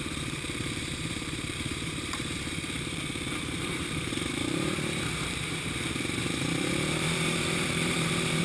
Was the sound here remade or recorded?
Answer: remade